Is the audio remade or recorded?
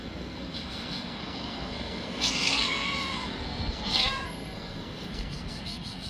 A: remade